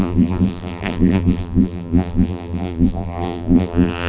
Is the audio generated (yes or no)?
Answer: yes